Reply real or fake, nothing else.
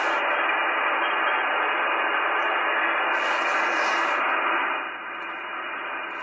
real